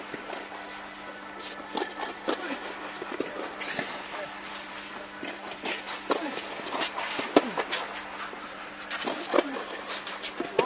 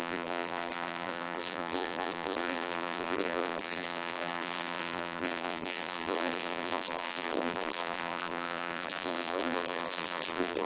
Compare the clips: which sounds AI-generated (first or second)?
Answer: second